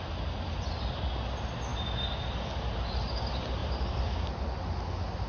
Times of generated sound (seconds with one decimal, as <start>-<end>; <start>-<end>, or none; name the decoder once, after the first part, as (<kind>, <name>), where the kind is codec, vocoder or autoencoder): none